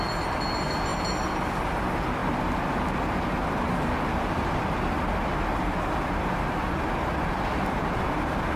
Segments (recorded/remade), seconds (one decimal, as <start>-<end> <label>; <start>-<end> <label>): 0.0-8.6 recorded